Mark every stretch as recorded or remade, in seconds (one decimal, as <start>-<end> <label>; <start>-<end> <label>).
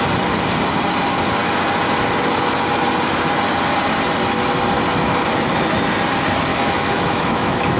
0.0-6.5 recorded; 6.5-7.8 remade